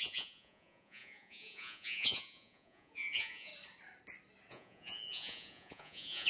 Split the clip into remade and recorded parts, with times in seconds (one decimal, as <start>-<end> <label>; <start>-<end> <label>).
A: 0.0-3.5 remade; 3.5-4.5 recorded; 4.5-6.3 remade